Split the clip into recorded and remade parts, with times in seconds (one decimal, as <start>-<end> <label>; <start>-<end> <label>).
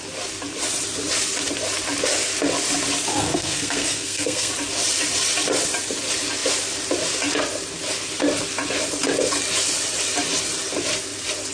0.0-3.1 recorded; 3.1-4.5 remade; 4.5-11.5 recorded